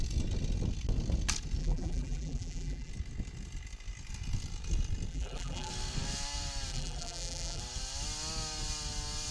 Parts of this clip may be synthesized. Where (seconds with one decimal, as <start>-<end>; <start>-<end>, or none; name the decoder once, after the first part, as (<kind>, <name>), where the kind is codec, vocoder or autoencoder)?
1.6-2.9 (vocoder, BigVGAN v2); 5.1-5.7; 6.7-7.6